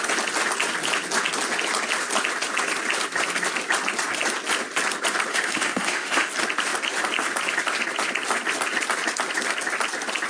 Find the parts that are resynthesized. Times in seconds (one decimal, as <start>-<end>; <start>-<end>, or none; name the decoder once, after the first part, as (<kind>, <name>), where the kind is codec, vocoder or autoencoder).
5.3-6.3 (autoencoder, DAC-VAE)